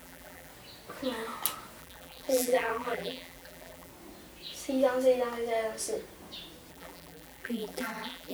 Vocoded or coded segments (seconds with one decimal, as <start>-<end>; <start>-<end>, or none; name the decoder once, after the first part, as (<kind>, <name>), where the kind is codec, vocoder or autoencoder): 0.0-0.5 (vocoder, BigVGAN v2); 1.8-3.9; 6.7-8.3